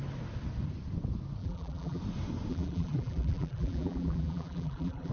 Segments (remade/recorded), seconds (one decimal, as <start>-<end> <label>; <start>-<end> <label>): 0.0-1.4 recorded; 1.4-2.0 remade; 2.0-2.5 recorded; 2.5-5.1 remade